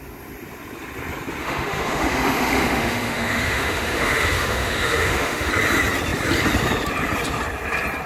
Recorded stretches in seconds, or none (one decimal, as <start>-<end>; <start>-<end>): 0.0-1.4; 5.5-8.1